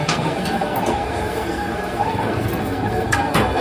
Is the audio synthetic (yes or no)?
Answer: yes